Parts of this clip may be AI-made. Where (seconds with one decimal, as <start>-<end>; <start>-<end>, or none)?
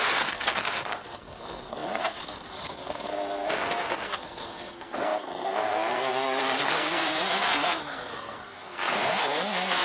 0.0-9.8